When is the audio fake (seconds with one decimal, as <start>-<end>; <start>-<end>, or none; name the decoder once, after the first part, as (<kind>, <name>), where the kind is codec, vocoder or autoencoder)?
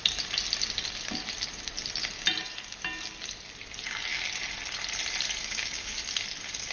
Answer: 5.4-6.0 (codec, DAC)